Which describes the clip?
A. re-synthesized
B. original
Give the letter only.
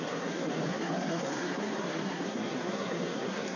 A